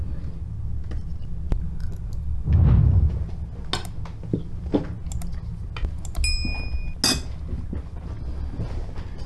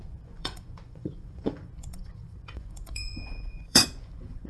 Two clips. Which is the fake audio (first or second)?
second